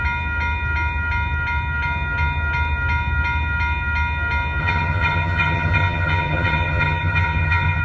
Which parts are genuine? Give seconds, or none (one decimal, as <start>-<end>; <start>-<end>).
0.0-4.6